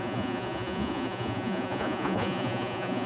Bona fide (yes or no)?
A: no